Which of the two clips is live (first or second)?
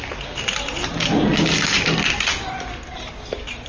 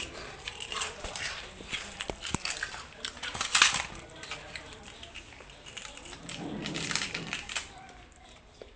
first